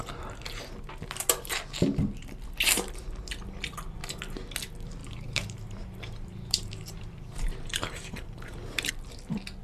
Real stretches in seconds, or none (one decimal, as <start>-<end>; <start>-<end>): 0.0-5.0; 8.9-9.6